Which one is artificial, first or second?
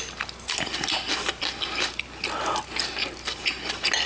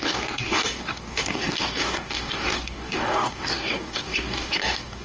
second